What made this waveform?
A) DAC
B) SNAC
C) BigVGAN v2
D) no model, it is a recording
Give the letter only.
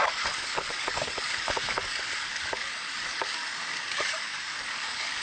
A